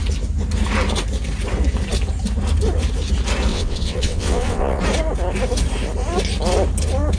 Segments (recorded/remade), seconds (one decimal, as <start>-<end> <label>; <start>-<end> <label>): 0.0-3.5 recorded; 3.5-4.8 remade; 4.8-7.2 recorded